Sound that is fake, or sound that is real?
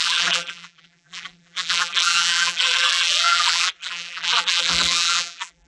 fake